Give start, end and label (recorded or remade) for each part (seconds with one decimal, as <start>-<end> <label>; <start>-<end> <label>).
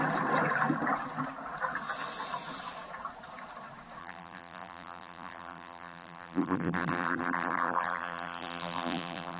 0.0-4.0 recorded; 4.0-9.4 remade